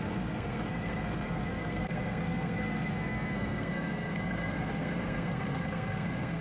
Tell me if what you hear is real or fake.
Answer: fake